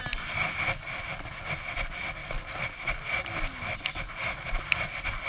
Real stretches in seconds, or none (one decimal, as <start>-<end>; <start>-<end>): 0.0-5.3

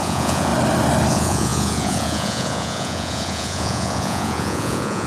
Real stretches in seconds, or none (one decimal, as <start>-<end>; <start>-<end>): 0.5-1.1

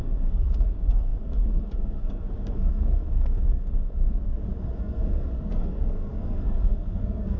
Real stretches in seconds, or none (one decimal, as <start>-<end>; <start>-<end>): none

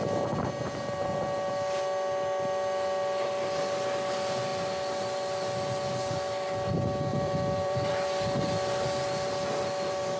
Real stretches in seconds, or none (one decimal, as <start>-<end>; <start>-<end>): 0.0-7.1; 7.9-10.2

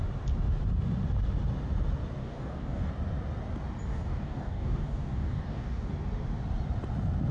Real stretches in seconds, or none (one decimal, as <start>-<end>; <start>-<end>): 0.0-2.2; 2.9-3.9; 5.9-7.3

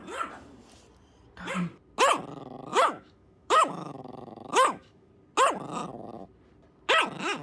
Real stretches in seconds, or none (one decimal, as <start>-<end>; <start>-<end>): 0.0-2.7; 5.1-7.4

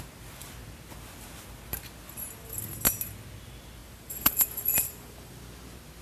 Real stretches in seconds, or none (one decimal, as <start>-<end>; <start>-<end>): 0.0-3.8; 5.3-6.0